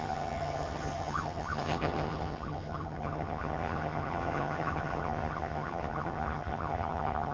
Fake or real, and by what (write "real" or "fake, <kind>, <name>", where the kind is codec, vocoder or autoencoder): fake, vocoder, HiFi-GAN